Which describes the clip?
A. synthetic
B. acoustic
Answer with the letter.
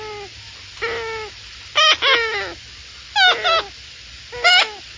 B